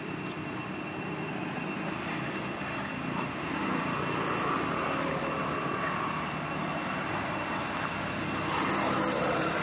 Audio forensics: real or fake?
real